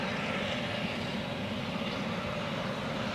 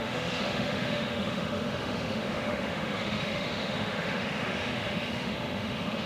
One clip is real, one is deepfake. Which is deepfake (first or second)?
second